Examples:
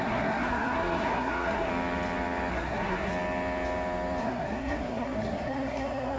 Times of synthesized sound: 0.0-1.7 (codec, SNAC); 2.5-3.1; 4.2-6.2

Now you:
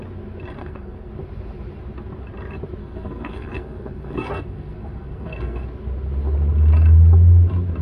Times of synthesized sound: 0.6-1.1 (codec, SNAC); 2.8-5.6

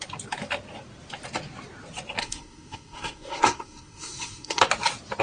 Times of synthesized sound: 2.2-4.6 (codec, SNAC)

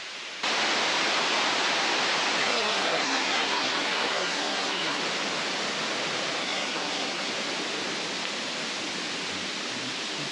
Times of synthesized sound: 2.4-5.0 (codec, SNAC); 6.4-7.3